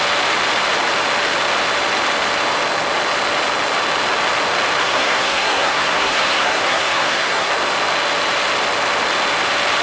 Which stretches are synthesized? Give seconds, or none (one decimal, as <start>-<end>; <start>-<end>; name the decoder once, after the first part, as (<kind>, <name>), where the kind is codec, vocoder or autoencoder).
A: 4.8-7.5 (codec, SNAC)